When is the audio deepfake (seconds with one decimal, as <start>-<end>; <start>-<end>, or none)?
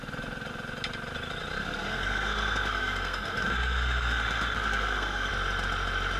1.6-5.3